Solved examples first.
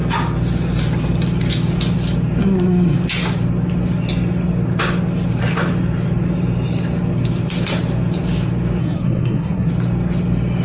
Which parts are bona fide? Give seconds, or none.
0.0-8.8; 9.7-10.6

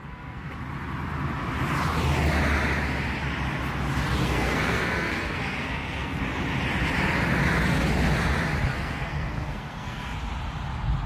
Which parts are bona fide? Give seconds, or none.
0.5-4.2; 6.2-8.7; 10.2-11.1